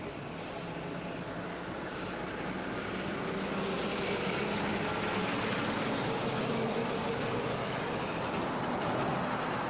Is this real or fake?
real